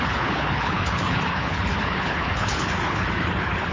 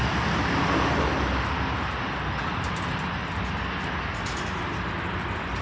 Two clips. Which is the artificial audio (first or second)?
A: first